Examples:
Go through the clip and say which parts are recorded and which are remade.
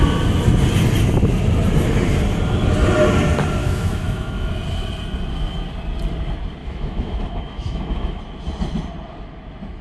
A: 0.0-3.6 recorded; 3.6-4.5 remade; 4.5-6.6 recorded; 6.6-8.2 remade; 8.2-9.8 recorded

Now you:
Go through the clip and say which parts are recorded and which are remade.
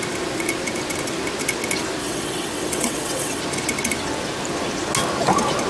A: 0.0-2.0 recorded; 2.0-3.4 remade; 3.4-5.7 recorded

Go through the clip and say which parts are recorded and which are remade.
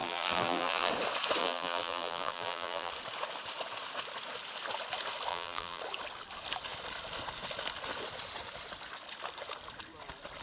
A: 0.0-0.9 remade; 0.9-1.4 recorded; 1.4-2.9 remade; 2.9-5.3 recorded; 5.3-5.8 remade; 5.8-10.4 recorded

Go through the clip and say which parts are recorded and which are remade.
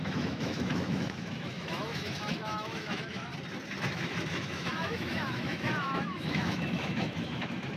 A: 0.0-3.3 remade; 3.3-3.9 recorded; 3.9-7.8 remade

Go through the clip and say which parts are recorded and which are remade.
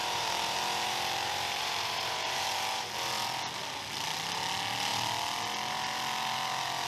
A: 0.0-2.9 remade; 2.9-6.9 recorded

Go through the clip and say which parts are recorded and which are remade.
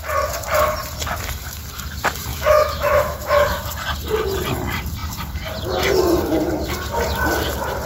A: 0.0-2.3 recorded; 2.3-3.6 remade; 3.6-7.9 recorded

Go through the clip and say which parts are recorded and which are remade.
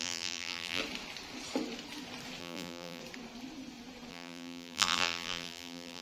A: 0.0-0.8 remade; 0.8-2.4 recorded; 2.4-3.0 remade; 3.0-4.1 recorded; 4.1-6.0 remade